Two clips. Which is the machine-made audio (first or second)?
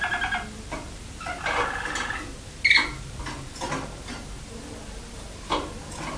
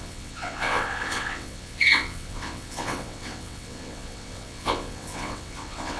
second